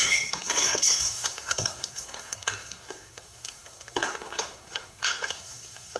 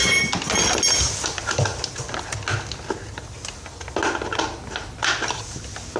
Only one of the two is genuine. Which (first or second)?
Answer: second